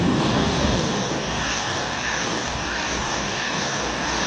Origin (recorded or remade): remade